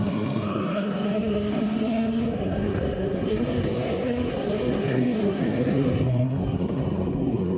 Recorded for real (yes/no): no